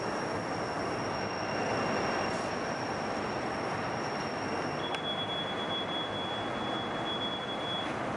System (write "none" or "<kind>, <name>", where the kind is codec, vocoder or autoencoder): none